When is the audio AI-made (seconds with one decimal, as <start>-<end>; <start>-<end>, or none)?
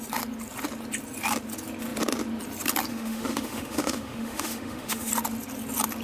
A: 2.9-5.1